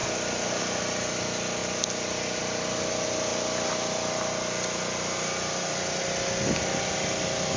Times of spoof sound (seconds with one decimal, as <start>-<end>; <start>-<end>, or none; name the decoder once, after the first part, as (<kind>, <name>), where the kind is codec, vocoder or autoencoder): 0.0-0.6 (vocoder, BigVGAN v2); 1.6-2.4; 3.3-6.0